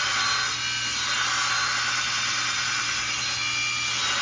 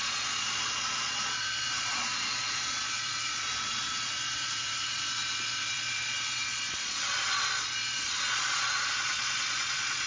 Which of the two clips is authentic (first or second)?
first